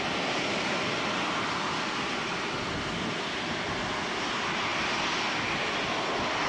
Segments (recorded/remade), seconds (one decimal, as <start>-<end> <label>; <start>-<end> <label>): 0.0-6.5 recorded